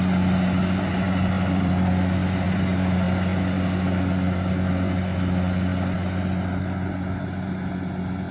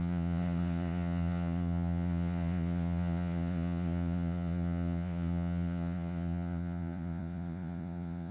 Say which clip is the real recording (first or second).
first